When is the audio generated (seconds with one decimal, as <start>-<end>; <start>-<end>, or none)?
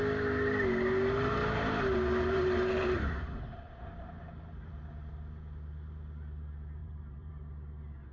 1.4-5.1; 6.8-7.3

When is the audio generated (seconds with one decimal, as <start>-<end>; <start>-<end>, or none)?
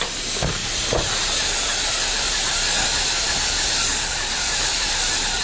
4.1-5.4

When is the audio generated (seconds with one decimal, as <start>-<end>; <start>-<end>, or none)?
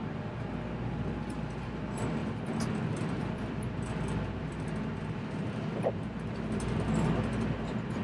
2.2-5.9